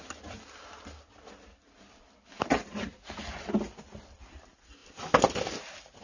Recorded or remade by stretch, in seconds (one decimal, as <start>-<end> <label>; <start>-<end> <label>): 0.0-6.0 recorded